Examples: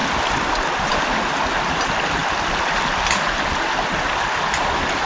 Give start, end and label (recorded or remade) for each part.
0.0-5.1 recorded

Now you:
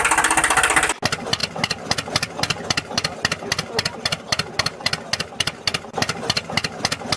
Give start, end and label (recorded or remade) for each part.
0.0-7.2 recorded

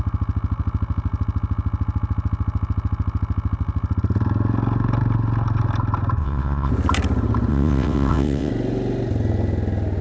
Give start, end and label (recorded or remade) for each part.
0.0-6.2 recorded; 6.2-6.7 remade; 6.7-7.5 recorded; 7.5-8.5 remade; 8.5-10.0 recorded

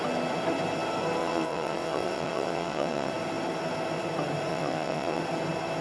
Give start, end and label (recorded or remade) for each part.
0.0-1.2 recorded; 1.2-3.1 remade; 3.1-4.5 recorded; 4.5-5.2 remade; 5.2-5.8 recorded